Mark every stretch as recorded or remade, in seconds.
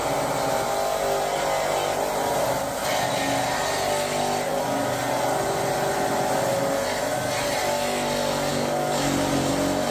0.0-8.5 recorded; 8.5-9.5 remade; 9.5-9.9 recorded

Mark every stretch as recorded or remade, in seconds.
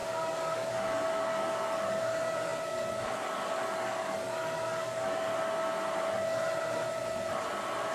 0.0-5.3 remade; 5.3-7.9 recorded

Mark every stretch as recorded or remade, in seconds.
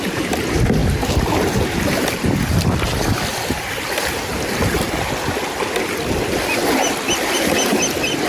0.0-8.3 recorded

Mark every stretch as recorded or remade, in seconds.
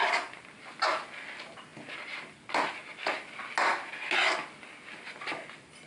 0.0-5.9 recorded